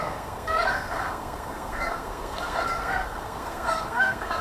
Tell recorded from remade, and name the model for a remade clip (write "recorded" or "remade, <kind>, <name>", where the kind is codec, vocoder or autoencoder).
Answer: remade, codec, SNAC